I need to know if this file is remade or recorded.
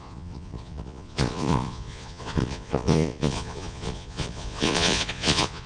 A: remade